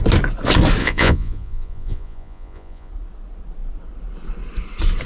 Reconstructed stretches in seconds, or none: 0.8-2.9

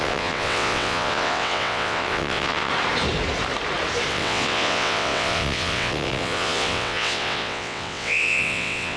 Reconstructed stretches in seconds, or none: 0.0-2.7; 4.1-9.0

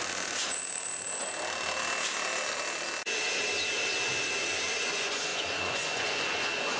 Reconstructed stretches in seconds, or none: 0.0-0.9; 4.8-6.8

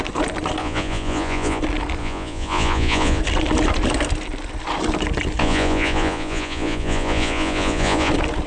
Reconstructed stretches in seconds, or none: 0.6-1.6; 2.0-3.2; 5.4-8.1

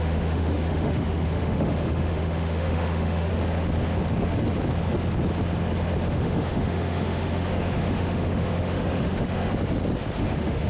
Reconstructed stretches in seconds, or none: 0.0-3.3; 6.1-9.5; 10.2-10.7

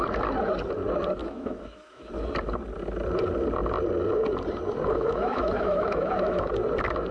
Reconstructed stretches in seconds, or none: 1.2-2.1; 4.9-6.5

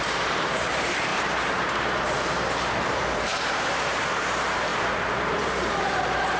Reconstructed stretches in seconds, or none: 0.0-6.4

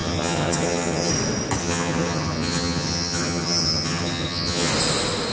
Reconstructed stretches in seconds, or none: 0.0-1.1; 1.6-4.7